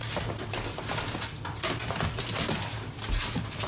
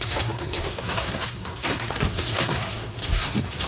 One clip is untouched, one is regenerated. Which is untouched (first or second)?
first